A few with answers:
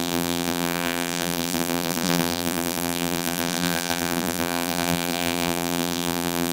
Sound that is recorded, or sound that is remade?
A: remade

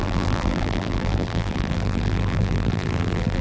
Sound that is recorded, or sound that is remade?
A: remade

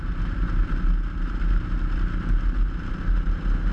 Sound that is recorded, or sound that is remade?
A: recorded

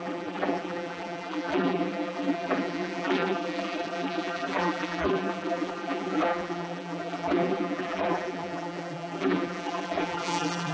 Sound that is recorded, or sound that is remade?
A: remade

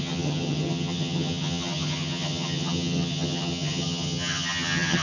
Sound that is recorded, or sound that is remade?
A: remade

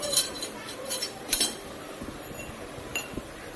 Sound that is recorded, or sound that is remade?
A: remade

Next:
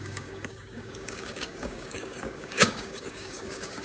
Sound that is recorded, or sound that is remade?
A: remade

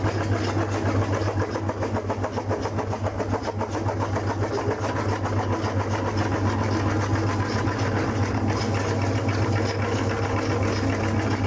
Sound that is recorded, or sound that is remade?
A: recorded